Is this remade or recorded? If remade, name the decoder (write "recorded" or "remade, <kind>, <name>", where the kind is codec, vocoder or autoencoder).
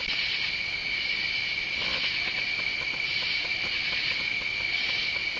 recorded